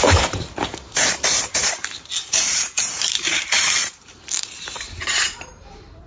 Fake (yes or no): yes